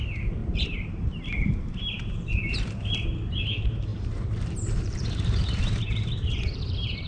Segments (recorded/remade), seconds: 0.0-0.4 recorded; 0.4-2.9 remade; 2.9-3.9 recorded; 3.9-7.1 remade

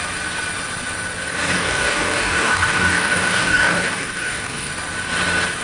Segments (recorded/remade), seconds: 0.0-1.3 recorded; 1.3-4.7 remade; 4.7-5.6 recorded

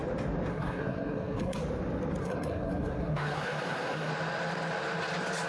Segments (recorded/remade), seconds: 0.0-0.5 recorded; 0.5-1.6 remade; 1.6-2.2 recorded; 2.2-4.1 remade; 4.1-5.5 recorded

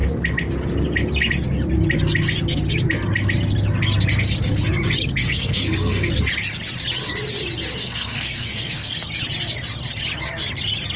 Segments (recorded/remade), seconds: 0.0-5.2 recorded; 5.2-6.1 remade; 6.1-7.8 recorded; 7.8-8.9 remade; 8.9-11.0 recorded

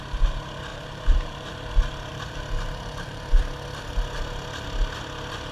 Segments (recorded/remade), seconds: 0.0-0.7 recorded; 0.7-1.7 remade; 1.7-2.1 recorded; 2.1-3.4 remade; 3.4-5.5 recorded